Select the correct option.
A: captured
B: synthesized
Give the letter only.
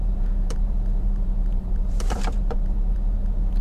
B